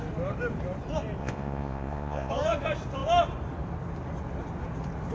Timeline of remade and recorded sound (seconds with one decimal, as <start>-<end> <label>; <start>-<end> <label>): 0.0-1.2 recorded; 1.2-2.3 remade; 2.3-5.1 recorded